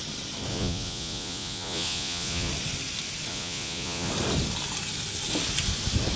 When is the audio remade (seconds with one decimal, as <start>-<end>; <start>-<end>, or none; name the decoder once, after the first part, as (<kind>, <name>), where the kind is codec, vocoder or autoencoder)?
0.5-2.5 (vocoder, Vocos); 3.3-4.1